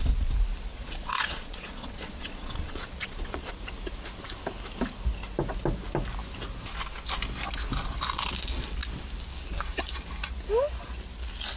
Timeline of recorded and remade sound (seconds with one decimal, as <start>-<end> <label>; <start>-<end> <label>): 0.0-0.7 recorded; 0.7-3.5 remade; 3.5-11.6 recorded